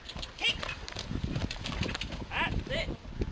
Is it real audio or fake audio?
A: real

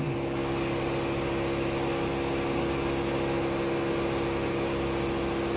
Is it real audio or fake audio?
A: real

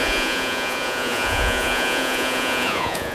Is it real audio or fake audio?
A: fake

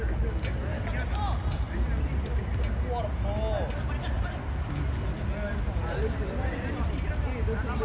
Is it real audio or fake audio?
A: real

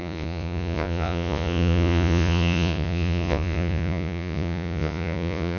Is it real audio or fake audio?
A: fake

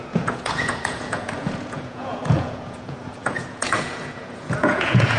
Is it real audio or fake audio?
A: fake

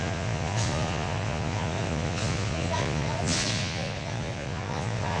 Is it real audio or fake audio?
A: fake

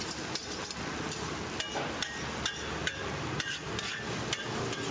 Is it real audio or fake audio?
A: real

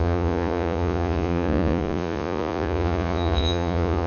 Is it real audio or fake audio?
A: fake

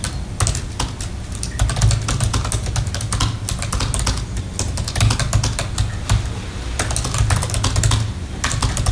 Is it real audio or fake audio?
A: real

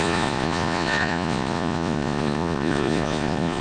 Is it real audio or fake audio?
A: fake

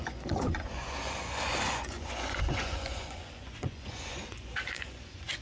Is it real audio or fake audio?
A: fake